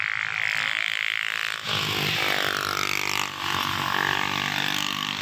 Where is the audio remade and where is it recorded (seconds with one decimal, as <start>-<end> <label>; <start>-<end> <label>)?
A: 0.0-0.5 remade; 0.5-2.1 recorded; 2.1-5.2 remade